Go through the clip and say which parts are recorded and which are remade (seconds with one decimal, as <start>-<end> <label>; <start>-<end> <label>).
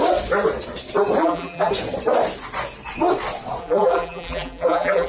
0.0-1.2 recorded; 1.2-1.7 remade; 1.7-3.6 recorded; 3.6-5.1 remade